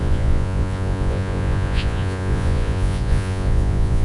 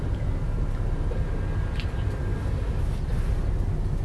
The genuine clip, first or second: second